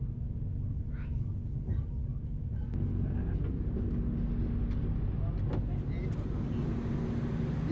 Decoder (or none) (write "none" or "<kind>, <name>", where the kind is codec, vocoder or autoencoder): none